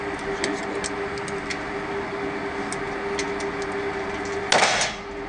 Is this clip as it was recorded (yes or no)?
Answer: yes